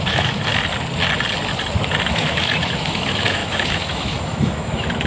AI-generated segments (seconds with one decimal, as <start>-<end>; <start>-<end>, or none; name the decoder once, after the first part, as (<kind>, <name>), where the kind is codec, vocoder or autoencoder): 0.0-0.5 (autoencoder, DAC-VAE); 2.1-5.1